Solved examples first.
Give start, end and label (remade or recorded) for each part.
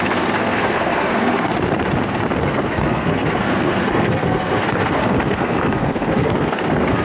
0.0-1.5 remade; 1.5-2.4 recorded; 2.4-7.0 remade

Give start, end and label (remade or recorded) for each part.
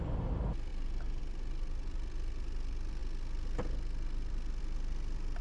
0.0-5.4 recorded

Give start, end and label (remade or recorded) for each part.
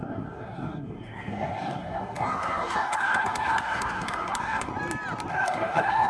0.0-4.7 remade; 4.7-5.3 recorded; 5.3-6.1 remade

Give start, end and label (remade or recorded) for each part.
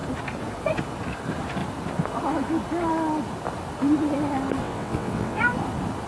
0.0-4.6 recorded; 4.6-5.4 remade; 5.4-6.1 recorded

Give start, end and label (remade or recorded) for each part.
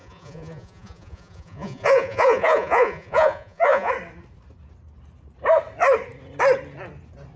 0.0-3.9 remade; 3.9-7.4 recorded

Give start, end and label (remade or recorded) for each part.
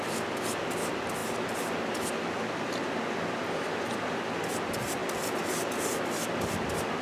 0.0-7.0 recorded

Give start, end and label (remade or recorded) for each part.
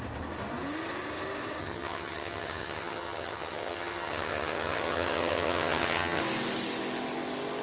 0.0-1.6 recorded; 1.6-6.2 remade; 6.2-7.6 recorded